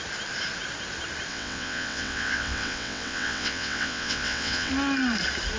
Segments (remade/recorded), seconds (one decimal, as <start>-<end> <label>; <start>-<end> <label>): 0.0-1.3 recorded; 1.3-4.7 remade; 4.7-5.6 recorded